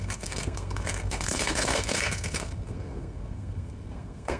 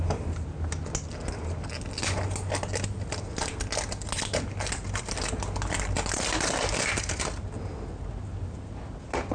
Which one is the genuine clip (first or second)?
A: second